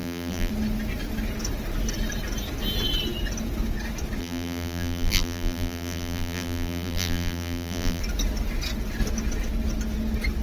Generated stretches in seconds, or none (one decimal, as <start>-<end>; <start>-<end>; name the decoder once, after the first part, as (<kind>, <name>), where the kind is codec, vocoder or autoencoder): 0.0-0.5 (vocoder, BigVGAN v2); 4.2-8.0